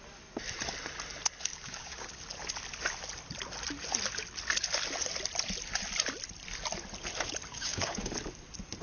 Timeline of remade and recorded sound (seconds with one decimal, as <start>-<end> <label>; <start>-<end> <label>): 0.0-1.5 recorded; 1.5-2.2 remade; 2.2-7.5 recorded; 7.5-8.1 remade; 8.1-8.8 recorded

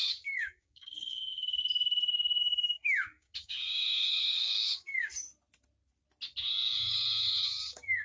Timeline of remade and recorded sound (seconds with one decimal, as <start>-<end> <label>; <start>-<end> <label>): 0.0-1.6 remade; 1.6-2.4 recorded; 2.4-5.1 remade; 5.1-6.5 recorded; 6.5-8.0 remade

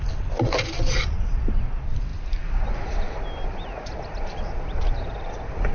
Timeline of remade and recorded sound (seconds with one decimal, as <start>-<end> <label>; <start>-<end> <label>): 0.0-5.7 recorded

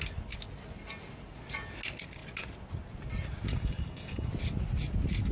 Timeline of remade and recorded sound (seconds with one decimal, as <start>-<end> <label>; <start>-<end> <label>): 0.0-3.5 recorded; 3.5-4.3 remade; 4.3-5.3 recorded

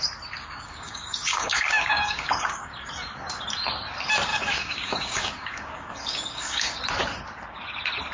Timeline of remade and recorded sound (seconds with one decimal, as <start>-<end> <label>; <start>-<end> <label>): 0.0-0.4 recorded; 0.4-2.7 remade; 2.7-4.3 recorded; 4.3-6.8 remade; 6.8-8.1 recorded

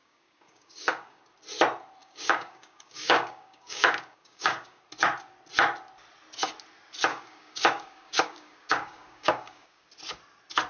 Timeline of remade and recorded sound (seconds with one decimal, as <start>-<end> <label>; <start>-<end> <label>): 0.0-1.2 remade; 1.2-2.0 recorded; 2.0-4.8 remade; 4.8-7.1 recorded; 7.1-9.9 remade; 9.9-10.7 recorded

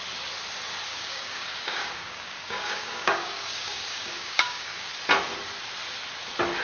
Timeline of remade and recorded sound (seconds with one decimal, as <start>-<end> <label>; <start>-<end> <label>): 0.0-0.9 recorded; 0.9-4.9 remade; 4.9-6.6 recorded